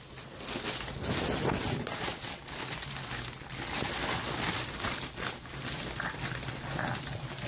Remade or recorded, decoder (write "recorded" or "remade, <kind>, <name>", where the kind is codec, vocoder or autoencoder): recorded